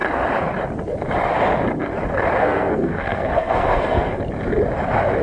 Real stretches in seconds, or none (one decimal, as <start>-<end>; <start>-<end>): 0.0-2.4; 4.2-5.2